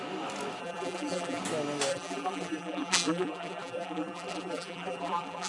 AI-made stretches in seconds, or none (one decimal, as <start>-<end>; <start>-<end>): 0.6-1.4; 1.9-5.5

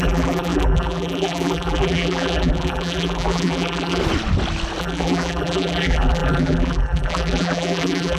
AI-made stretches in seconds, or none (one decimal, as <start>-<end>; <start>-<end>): 0.0-4.0; 4.8-8.2

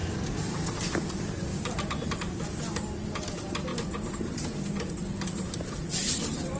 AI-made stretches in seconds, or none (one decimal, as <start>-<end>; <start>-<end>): 0.0-0.9; 1.5-2.4; 3.7-6.6